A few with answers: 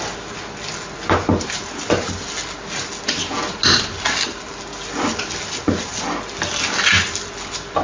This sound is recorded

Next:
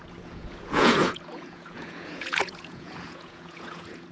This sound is remade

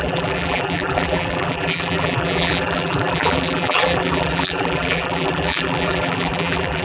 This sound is remade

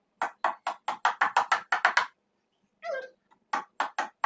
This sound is recorded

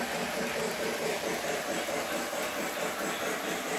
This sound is recorded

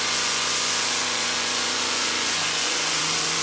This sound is remade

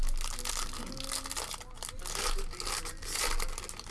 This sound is recorded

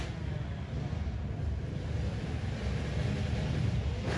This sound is recorded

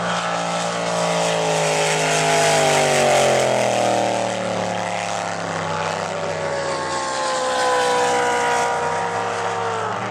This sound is recorded